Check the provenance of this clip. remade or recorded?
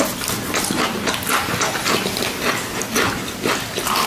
recorded